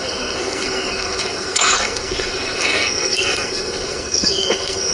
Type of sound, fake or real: fake